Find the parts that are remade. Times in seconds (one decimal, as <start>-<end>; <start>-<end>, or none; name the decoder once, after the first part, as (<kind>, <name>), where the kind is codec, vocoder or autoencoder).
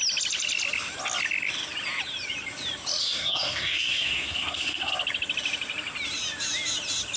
3.0-4.9 (codec, SNAC)